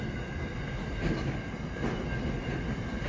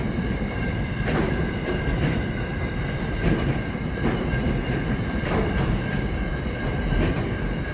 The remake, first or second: second